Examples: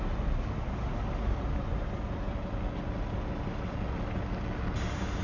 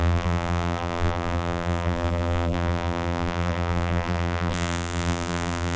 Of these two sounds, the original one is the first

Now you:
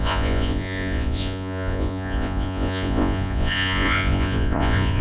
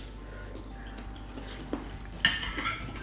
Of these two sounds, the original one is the second